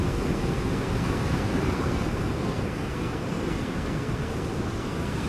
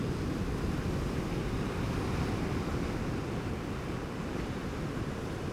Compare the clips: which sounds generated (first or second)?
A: first